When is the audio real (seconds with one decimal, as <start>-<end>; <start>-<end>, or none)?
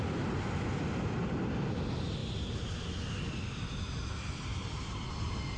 0.0-4.5